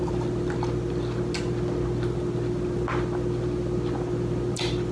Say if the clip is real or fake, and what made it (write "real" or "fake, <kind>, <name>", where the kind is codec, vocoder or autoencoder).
real